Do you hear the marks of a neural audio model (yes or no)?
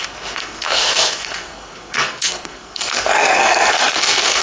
yes